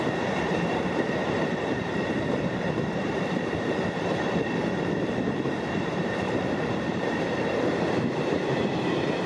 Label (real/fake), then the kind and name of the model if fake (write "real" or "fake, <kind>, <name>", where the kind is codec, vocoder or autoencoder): fake, vocoder, BigVGAN v2